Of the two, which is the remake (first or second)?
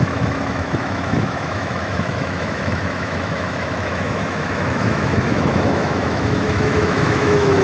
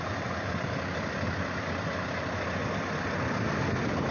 first